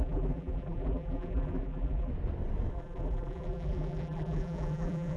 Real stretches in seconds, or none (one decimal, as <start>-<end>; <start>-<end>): 2.1-2.7